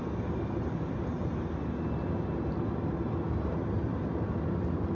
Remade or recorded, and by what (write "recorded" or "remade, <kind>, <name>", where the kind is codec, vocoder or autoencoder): recorded